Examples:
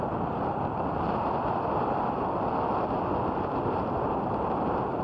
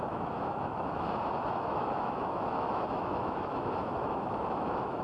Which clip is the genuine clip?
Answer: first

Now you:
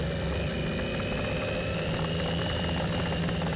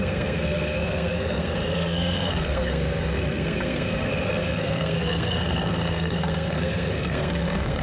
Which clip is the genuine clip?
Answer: first